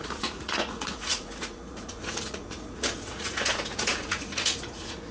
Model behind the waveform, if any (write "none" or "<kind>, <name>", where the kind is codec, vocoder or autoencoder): vocoder, Vocos